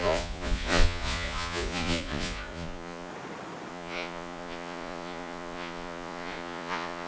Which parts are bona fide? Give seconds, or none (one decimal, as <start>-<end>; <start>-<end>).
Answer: 3.1-3.7